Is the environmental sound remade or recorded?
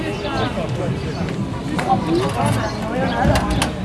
recorded